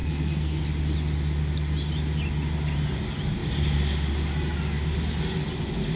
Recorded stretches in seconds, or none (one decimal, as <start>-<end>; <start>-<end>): 0.6-6.0